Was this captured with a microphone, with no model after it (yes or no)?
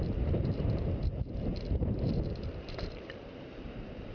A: no